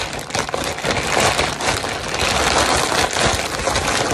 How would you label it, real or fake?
real